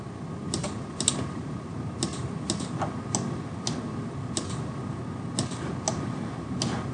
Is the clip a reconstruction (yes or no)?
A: no